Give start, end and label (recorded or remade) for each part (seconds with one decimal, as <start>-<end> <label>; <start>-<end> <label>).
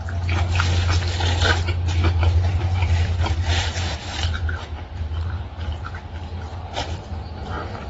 0.0-2.2 recorded; 2.2-5.8 remade; 5.8-6.5 recorded; 6.5-7.1 remade; 7.1-7.9 recorded